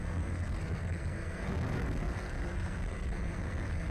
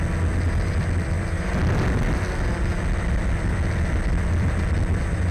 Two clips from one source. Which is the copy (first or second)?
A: first